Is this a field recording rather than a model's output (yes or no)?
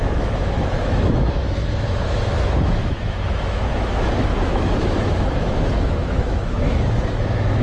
no